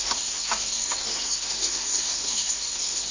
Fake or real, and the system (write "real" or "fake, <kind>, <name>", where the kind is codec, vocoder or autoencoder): fake, codec, SNAC